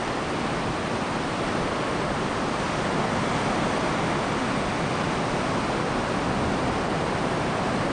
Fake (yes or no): no